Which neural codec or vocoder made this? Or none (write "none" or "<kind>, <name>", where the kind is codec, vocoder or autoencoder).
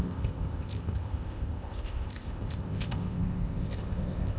codec, ZipCodec